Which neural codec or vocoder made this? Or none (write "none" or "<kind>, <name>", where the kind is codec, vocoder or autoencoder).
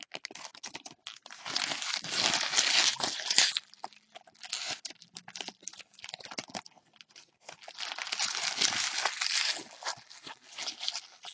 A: none